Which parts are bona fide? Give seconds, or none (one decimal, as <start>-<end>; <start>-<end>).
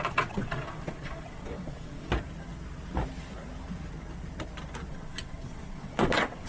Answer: 2.1-4.9